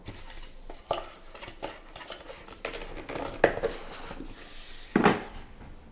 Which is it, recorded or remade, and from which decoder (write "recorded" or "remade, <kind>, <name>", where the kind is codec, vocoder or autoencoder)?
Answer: recorded